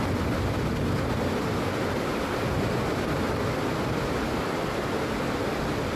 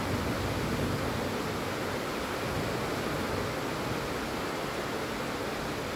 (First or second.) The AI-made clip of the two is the first